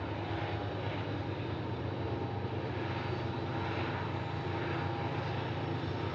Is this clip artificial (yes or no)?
no